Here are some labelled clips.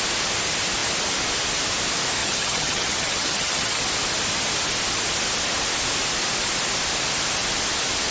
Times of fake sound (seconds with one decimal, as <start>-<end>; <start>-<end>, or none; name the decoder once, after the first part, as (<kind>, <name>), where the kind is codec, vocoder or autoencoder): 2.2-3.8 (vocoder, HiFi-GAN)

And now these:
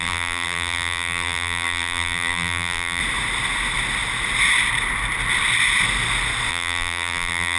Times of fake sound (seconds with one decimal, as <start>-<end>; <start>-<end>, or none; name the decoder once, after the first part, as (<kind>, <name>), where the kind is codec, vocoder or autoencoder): 0.0-3.0 (vocoder, BigVGAN v2); 6.5-7.6

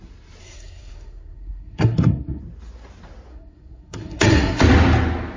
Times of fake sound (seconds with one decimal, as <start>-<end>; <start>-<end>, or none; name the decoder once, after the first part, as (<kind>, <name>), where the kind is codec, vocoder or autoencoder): 0.4-2.4 (codec, SNAC); 3.3-4.6